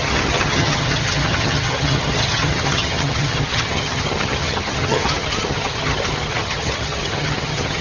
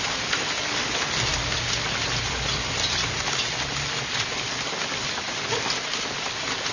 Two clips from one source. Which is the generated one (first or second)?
first